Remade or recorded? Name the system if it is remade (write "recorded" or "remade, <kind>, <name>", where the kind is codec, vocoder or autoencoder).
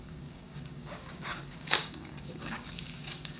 remade, codec, DAC